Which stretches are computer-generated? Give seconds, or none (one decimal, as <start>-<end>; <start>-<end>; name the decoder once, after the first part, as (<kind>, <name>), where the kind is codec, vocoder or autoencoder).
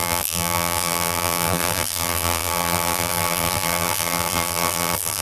0.0-5.2 (vocoder, BigVGAN v2)